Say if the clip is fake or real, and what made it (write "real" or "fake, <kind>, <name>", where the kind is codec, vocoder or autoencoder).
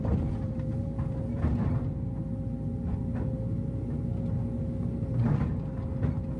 real